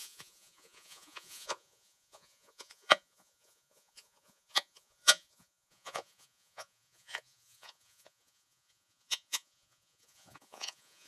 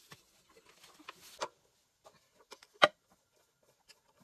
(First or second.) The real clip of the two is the second